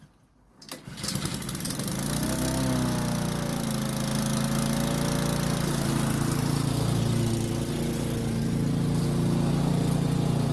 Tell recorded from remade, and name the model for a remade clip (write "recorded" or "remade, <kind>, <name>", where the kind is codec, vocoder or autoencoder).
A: recorded